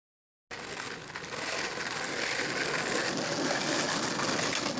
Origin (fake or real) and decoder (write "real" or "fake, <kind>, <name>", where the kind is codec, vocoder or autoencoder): real